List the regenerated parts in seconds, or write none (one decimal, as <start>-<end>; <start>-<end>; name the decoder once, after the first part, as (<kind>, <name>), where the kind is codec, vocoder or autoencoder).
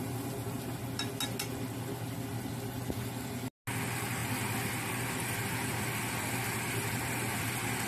none